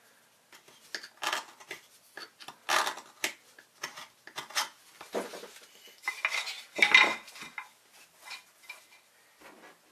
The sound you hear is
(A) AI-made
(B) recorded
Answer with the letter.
B